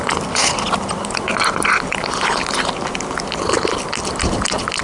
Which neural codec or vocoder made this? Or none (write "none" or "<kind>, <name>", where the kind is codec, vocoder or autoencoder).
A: none